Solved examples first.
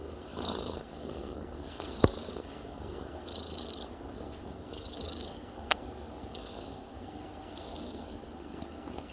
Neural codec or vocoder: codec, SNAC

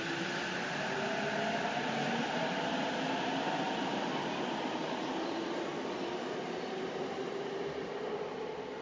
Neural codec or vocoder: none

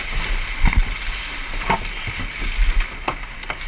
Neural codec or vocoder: none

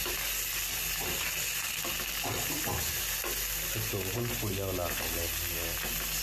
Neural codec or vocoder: none